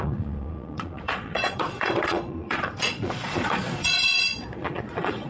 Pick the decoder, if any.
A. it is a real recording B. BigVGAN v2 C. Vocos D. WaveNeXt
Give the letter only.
C